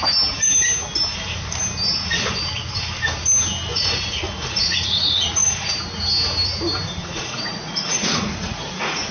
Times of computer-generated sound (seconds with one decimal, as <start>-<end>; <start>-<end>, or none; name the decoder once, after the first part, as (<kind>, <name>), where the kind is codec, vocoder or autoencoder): 3.7-5.7 (vocoder, Vocos); 7.0-9.1

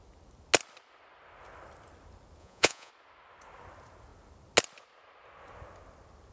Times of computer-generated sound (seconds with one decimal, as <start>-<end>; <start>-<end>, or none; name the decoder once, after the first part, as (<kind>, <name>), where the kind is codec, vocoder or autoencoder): 2.4-2.9 (vocoder, Vocos)